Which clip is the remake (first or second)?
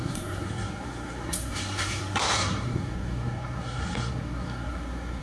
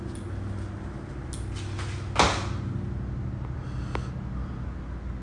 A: first